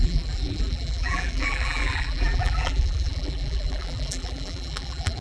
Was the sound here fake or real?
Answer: fake